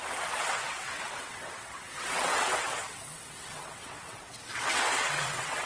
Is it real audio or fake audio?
fake